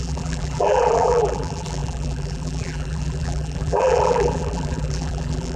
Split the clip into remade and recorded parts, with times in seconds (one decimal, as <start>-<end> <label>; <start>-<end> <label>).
0.0-5.6 remade